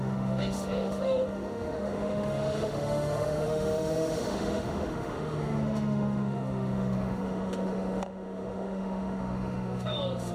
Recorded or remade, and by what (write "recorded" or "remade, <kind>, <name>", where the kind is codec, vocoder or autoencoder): remade, autoencoder, DAC-VAE